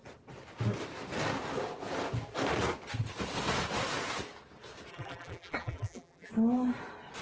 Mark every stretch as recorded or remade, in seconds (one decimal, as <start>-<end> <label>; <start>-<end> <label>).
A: 0.0-4.9 recorded; 4.9-6.3 remade; 6.3-7.2 recorded